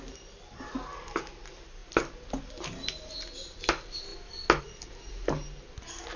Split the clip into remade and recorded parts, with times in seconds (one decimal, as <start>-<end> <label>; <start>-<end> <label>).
0.0-6.2 recorded